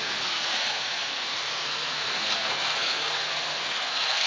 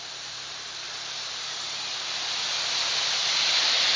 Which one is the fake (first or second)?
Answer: first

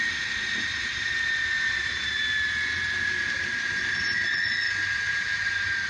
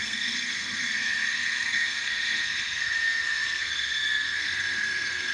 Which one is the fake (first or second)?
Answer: second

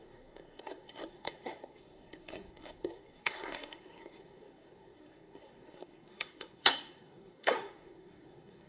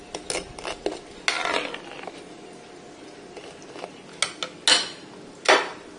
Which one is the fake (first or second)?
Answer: first